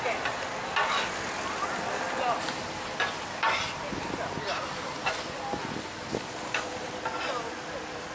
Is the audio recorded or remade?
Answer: recorded